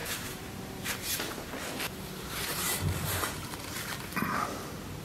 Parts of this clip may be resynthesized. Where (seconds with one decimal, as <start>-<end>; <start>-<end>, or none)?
0.0-1.1; 2.5-3.5